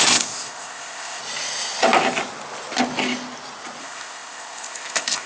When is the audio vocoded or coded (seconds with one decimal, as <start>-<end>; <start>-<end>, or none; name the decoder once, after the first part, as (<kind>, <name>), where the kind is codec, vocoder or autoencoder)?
0.0-1.2 (codec, ZipCodec); 3.8-5.3